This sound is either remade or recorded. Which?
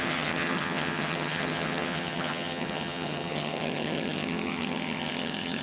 remade